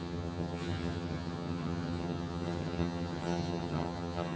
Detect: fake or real fake